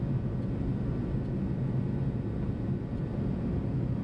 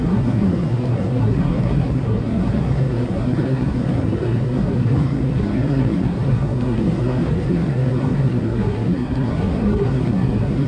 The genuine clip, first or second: first